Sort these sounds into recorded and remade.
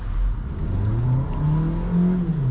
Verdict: recorded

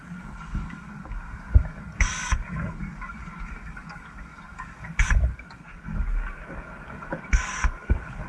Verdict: remade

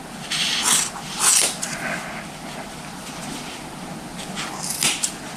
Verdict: recorded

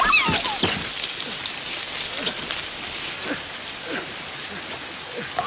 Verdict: recorded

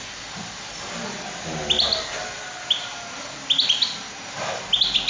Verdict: recorded